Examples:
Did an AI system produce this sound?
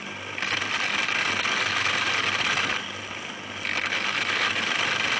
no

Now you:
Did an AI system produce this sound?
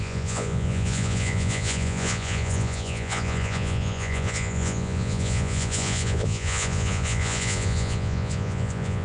yes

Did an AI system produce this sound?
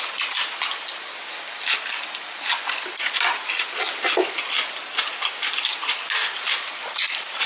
no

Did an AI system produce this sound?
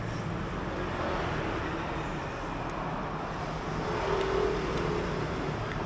no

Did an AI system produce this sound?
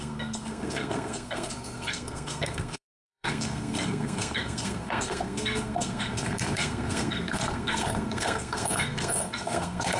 yes